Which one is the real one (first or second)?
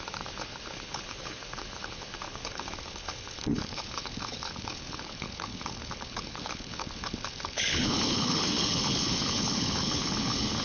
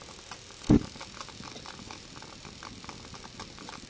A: second